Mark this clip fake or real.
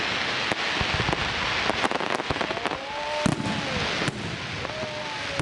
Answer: real